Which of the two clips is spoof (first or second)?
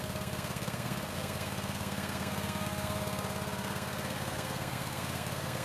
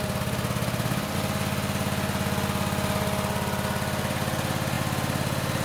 first